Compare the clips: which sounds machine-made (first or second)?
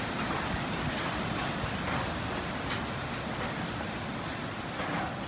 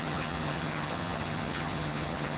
second